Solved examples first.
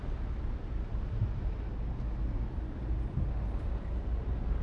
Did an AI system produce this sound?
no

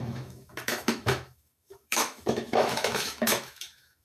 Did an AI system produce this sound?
yes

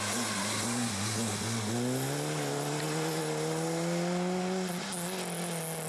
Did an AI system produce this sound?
no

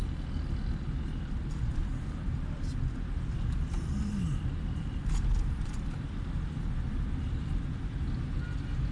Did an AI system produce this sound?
no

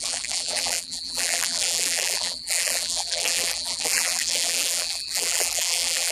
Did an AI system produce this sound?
yes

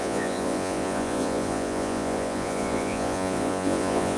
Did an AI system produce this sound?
yes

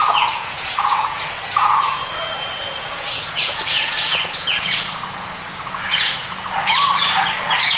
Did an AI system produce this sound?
yes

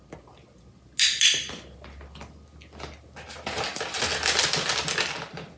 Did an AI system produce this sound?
no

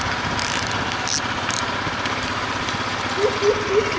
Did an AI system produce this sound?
no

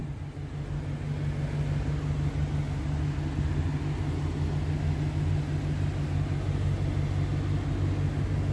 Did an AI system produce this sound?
no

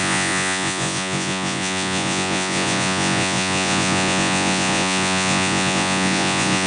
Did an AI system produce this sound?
yes